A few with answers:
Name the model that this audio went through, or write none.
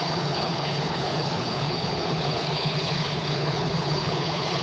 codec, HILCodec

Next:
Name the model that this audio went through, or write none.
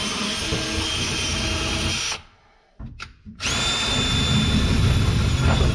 none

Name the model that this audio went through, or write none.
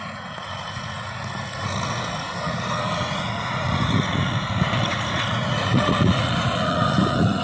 vocoder, Vocos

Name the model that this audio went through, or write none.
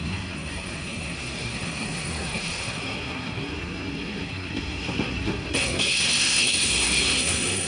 codec, SNAC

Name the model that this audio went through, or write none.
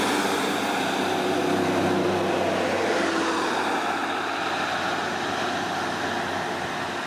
none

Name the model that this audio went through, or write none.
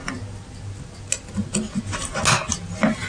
none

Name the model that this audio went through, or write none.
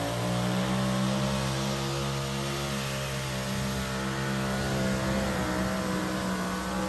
none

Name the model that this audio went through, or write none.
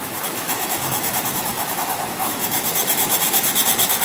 autoencoder, DAC-VAE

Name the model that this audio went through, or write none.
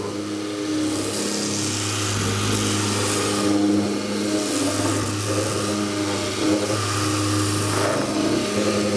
none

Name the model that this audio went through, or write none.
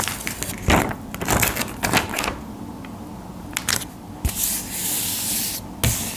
none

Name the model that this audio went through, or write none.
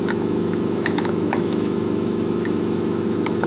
autoencoder, DAC-VAE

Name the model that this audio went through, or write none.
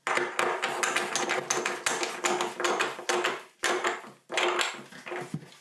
none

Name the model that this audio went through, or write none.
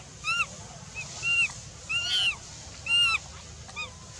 none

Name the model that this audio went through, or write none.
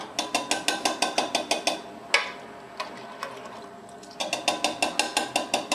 none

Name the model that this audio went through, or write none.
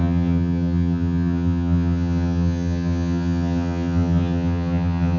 vocoder, HiFi-GAN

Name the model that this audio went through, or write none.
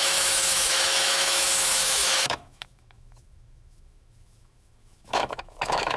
autoencoder, DAC-VAE